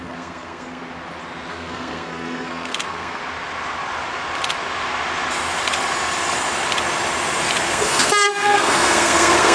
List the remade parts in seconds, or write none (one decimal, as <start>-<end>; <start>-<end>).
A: 0.0-0.8; 1.5-3.2; 7.6-9.5